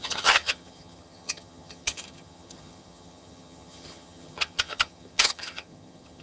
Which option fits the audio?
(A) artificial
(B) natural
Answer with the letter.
A